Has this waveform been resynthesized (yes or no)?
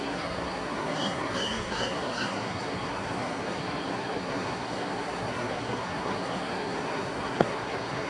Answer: yes